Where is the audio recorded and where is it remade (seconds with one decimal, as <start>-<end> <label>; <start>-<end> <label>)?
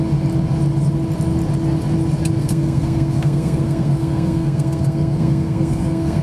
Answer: 0.0-2.4 recorded; 2.4-6.2 remade